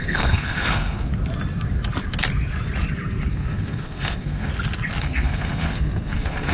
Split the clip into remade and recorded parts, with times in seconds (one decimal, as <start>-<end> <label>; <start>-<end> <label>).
0.0-1.1 remade; 1.1-3.3 recorded; 3.3-4.5 remade; 4.5-5.0 recorded; 5.0-6.5 remade